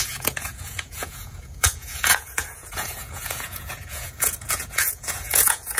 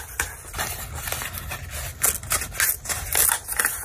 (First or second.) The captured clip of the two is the second